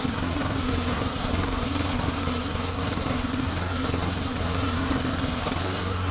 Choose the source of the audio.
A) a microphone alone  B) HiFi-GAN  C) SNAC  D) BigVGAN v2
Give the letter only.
C